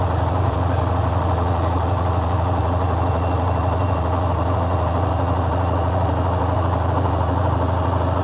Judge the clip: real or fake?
fake